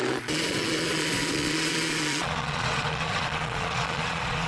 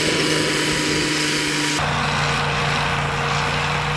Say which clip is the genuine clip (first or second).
second